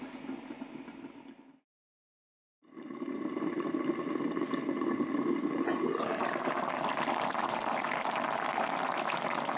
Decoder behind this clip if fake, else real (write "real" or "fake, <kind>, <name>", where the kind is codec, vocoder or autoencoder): real